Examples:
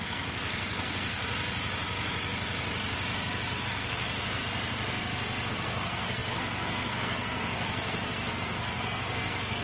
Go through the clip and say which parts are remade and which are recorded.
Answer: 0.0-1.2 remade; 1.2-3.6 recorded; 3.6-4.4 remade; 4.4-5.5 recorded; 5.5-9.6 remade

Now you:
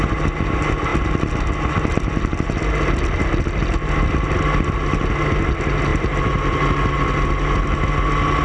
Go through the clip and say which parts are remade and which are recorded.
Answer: 0.0-8.4 recorded

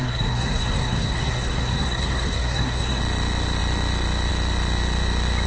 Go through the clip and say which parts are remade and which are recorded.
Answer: 0.0-3.0 remade; 3.0-5.5 recorded

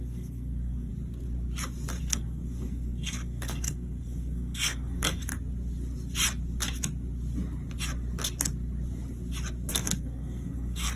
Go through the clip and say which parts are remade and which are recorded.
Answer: 0.0-0.9 remade; 0.9-2.0 recorded; 2.0-5.3 remade; 5.3-9.7 recorded; 9.7-11.0 remade

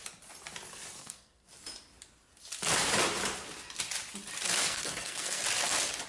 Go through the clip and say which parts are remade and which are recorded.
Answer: 0.0-1.0 recorded; 1.0-1.5 remade; 1.5-4.6 recorded; 4.6-5.4 remade; 5.4-6.1 recorded

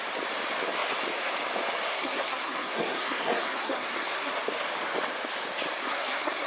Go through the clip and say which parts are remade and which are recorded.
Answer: 0.0-1.9 recorded; 1.9-4.3 remade; 4.3-5.8 recorded; 5.8-6.5 remade